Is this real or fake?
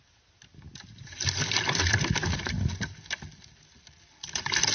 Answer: real